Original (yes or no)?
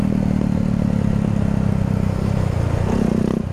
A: yes